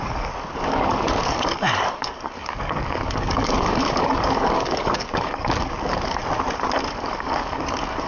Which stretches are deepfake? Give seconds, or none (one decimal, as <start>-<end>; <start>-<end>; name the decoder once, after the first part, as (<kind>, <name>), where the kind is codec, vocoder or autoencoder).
0.0-6.2 (codec, DAC); 6.9-8.1